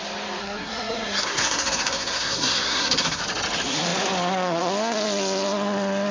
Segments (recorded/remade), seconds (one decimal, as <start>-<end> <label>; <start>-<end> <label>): 0.0-0.4 recorded; 0.4-3.2 remade; 3.2-6.1 recorded